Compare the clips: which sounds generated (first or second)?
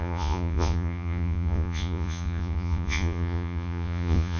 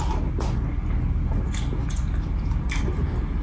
first